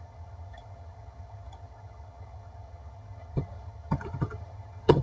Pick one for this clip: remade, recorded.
remade